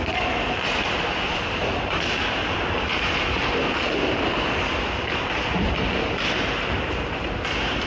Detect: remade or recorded remade